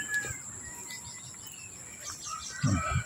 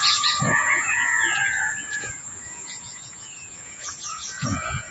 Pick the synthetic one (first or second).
second